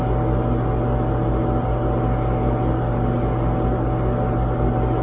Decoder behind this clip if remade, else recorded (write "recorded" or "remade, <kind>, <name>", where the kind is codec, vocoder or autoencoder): recorded